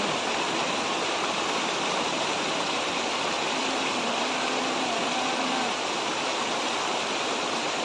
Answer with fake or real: fake